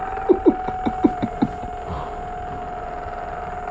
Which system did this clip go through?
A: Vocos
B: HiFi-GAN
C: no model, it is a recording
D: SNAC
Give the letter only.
C